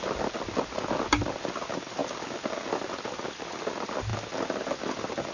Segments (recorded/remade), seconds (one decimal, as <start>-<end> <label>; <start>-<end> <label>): 0.0-5.3 recorded